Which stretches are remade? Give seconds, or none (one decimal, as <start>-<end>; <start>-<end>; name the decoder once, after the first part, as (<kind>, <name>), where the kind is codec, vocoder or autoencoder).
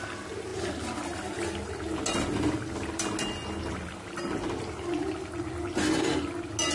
none